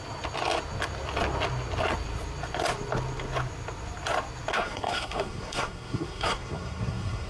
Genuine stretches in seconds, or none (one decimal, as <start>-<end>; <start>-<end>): 0.0-4.5